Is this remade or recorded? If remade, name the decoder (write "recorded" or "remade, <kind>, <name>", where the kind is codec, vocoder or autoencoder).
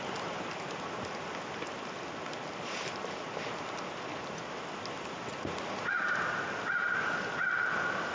recorded